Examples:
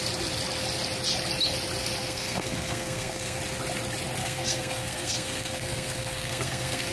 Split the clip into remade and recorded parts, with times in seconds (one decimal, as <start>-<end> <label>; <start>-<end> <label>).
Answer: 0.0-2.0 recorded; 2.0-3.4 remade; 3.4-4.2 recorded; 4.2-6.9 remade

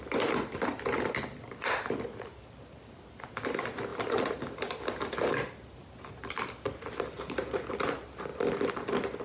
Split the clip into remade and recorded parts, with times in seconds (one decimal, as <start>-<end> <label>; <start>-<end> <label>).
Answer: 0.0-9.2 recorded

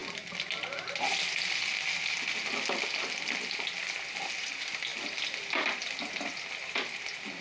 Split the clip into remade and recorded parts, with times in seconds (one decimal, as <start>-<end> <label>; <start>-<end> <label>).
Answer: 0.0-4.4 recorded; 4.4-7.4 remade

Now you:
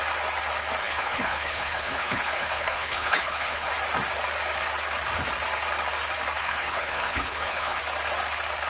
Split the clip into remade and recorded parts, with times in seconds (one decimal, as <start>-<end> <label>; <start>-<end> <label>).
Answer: 0.0-0.8 recorded; 0.8-3.7 remade; 3.7-6.4 recorded; 6.4-7.8 remade; 7.8-8.7 recorded